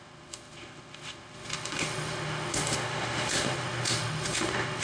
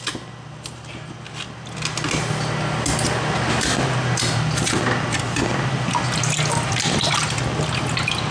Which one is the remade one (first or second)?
first